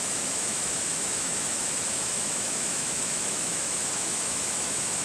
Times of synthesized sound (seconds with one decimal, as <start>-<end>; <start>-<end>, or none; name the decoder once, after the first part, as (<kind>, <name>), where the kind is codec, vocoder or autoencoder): 0.0-5.0 (autoencoder, DAC-VAE)

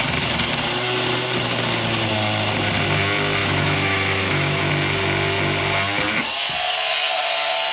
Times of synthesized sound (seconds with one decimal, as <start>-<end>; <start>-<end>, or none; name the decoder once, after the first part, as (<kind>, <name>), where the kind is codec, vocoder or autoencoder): 3.4-4.7 (autoencoder, DAC-VAE)

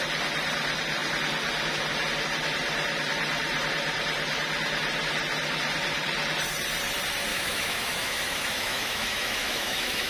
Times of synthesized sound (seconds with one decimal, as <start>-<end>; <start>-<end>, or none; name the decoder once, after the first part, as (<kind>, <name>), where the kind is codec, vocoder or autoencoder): 7.3-10.1 (autoencoder, DAC-VAE)